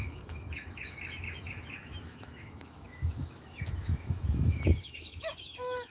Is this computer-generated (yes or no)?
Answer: yes